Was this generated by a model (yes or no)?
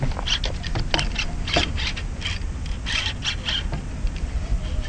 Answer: no